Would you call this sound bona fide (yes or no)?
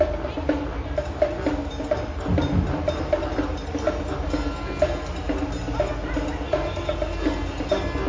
yes